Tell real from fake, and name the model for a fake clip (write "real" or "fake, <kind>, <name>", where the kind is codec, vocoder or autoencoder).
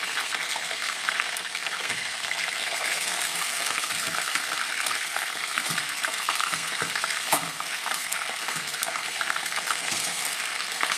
fake, codec, SNAC